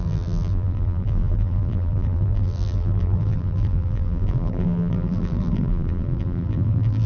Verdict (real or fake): fake